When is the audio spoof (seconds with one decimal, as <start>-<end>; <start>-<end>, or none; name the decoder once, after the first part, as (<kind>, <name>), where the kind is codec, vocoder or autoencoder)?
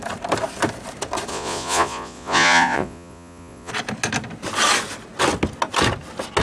1.3-3.7 (vocoder, Vocos)